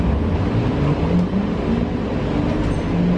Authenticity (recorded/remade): recorded